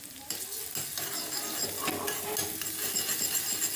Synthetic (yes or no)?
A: no